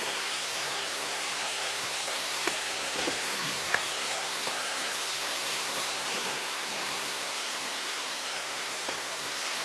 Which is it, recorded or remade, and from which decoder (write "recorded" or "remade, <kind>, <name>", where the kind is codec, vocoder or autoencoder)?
remade, codec, SNAC